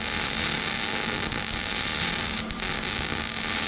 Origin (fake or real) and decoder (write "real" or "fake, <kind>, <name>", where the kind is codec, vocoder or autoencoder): real